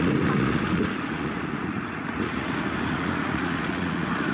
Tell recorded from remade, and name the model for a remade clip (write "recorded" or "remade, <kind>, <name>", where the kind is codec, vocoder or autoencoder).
remade, vocoder, Vocos